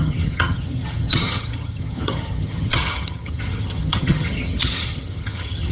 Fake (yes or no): yes